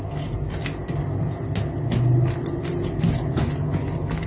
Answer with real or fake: real